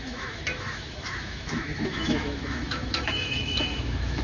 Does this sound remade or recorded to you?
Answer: remade